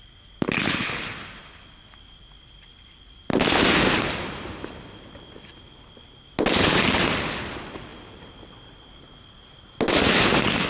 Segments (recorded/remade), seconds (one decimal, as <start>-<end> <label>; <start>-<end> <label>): 0.0-10.7 recorded